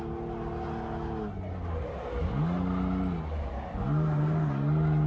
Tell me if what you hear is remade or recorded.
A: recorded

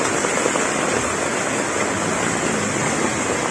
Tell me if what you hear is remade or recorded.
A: recorded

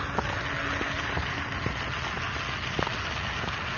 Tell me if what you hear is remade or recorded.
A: recorded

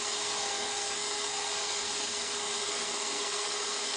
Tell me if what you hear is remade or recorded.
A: remade